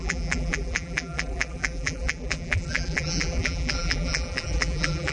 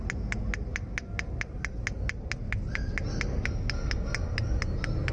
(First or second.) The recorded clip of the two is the second